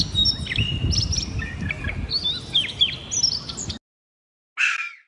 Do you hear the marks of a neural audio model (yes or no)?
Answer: no